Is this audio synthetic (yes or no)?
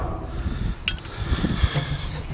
no